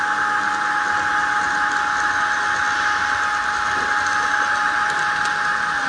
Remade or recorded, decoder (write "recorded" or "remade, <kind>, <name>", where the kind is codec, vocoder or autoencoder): recorded